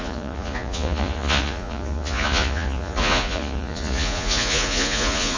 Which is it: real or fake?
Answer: fake